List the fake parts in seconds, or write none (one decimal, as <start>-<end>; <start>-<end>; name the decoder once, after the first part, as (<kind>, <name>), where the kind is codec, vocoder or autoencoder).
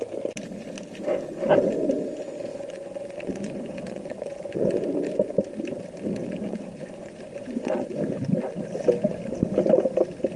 2.5-4.8 (vocoder, Vocos); 6.2-8.0